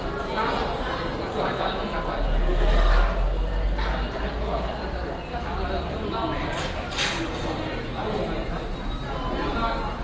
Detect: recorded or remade recorded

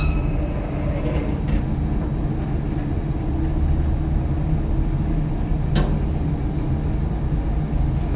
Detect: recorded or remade recorded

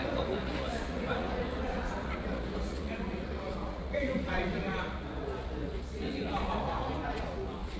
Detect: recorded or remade remade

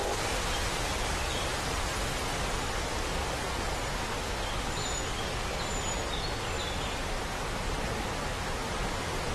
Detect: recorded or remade recorded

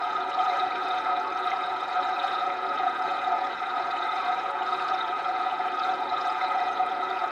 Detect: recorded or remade remade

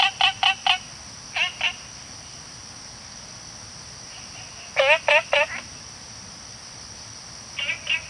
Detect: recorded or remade recorded